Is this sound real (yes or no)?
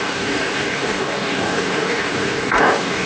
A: no